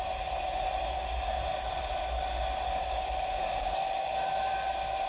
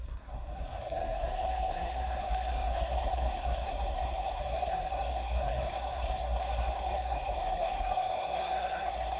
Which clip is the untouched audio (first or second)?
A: first